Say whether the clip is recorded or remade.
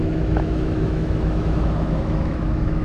remade